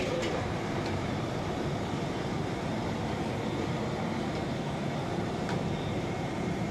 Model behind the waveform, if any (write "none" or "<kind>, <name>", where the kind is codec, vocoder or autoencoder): vocoder, BigVGAN v2